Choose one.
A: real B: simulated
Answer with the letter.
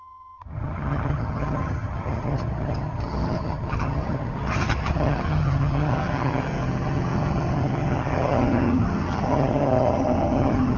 B